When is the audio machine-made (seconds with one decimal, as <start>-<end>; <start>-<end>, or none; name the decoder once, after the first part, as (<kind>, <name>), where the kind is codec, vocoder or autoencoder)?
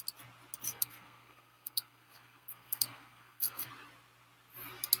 0.7-3.7 (codec, SNAC)